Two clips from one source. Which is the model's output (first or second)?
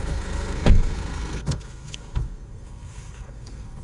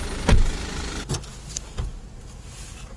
first